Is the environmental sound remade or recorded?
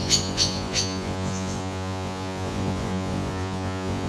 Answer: remade